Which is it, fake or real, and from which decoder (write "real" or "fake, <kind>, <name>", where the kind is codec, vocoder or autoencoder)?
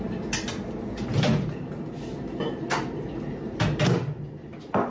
real